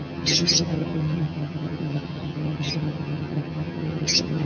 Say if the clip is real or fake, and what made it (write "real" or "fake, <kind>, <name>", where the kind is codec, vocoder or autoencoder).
fake, vocoder, HiFi-GAN